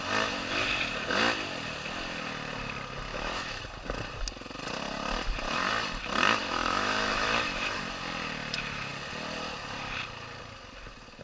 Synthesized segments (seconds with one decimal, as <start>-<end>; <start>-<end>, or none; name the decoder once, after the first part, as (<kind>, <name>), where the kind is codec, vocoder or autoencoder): 3.1-3.6 (autoencoder, DAC-VAE); 6.4-7.8